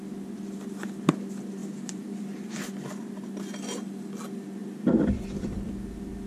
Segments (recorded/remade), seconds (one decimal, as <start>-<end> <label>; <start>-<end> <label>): 0.0-1.6 recorded; 1.6-2.2 remade; 2.2-4.6 recorded; 4.6-5.7 remade; 5.7-6.3 recorded